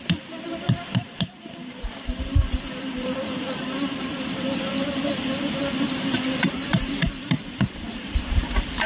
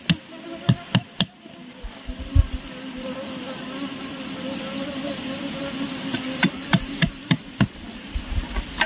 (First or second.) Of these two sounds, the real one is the second